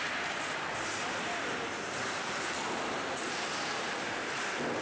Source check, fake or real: real